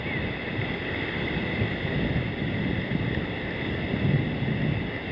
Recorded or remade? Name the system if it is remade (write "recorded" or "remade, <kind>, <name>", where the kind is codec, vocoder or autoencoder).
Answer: recorded